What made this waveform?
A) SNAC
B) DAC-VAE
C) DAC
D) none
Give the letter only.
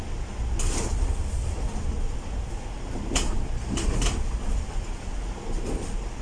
D